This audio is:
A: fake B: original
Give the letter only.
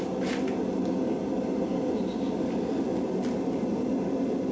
B